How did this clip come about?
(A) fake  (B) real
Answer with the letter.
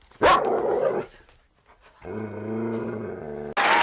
B